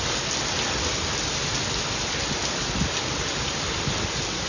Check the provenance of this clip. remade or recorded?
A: recorded